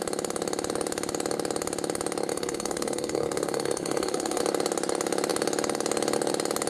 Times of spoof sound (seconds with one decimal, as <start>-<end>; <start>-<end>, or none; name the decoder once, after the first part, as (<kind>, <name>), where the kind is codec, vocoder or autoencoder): 2.3-4.4 (codec, SNAC)

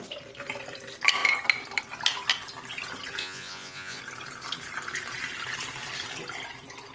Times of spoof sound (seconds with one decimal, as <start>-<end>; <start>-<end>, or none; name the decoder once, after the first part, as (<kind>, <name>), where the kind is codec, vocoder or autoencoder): 3.2-4.0 (vocoder, Vocos)

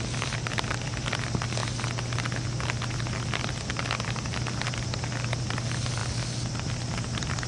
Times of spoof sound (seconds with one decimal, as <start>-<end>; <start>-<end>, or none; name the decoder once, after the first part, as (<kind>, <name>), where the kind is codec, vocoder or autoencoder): none

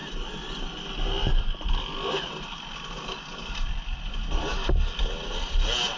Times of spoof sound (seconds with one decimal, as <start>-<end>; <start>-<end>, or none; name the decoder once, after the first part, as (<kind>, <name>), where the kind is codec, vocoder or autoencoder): none

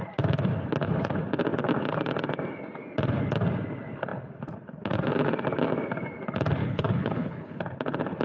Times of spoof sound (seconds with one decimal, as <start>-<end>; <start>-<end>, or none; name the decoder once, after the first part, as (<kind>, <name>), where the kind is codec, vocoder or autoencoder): 6.6-7.6 (codec, HILCodec)

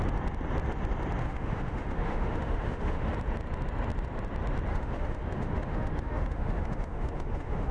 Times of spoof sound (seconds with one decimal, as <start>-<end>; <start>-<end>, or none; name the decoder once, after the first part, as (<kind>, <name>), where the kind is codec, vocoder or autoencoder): 1.2-3.1 (autoencoder, DAC-VAE); 4.7-7.7